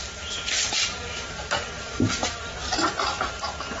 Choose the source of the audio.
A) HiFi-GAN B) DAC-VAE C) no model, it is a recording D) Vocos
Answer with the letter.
C